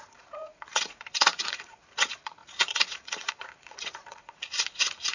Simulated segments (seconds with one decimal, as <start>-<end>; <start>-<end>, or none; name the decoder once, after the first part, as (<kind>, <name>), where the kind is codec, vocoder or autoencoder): 0.0-5.1 (vocoder, Vocos)